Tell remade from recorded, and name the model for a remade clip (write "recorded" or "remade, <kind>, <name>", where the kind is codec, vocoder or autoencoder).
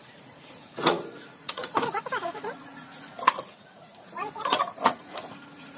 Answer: remade, vocoder, Vocos